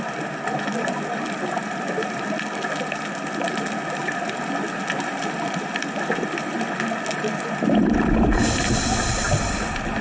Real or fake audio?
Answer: real